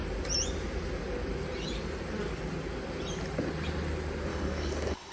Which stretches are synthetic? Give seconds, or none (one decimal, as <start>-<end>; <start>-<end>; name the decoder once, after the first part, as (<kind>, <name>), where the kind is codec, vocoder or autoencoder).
4.3-5.1 (codec, DAC)